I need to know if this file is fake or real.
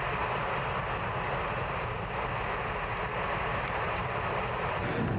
real